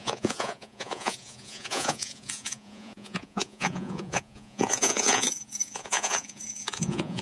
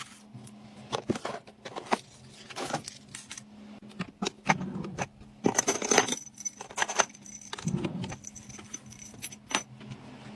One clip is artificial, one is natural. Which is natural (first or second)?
second